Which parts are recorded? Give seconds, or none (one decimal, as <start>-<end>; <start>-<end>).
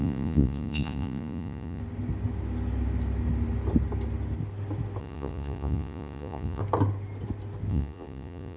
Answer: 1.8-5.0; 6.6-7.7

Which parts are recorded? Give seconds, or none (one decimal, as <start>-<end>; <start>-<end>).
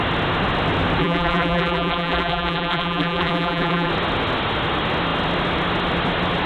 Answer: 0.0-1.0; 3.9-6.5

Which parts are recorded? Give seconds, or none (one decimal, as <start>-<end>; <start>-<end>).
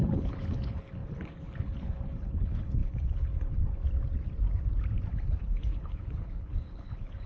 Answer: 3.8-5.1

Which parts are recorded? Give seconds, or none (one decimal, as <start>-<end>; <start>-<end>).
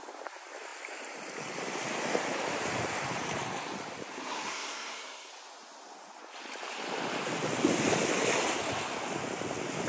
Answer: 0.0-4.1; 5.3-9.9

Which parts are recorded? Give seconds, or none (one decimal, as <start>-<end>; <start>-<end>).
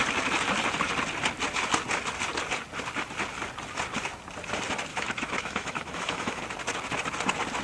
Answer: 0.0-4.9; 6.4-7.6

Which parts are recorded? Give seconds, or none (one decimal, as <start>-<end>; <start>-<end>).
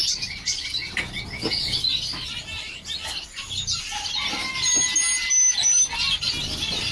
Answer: 0.0-6.9